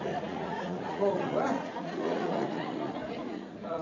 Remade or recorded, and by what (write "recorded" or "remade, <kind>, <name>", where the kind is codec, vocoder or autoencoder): remade, vocoder, Vocos